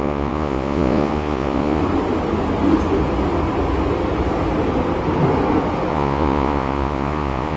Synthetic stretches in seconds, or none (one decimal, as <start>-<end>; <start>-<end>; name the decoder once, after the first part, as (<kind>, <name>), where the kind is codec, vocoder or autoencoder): 0.0-1.8 (vocoder, Vocos); 5.9-7.6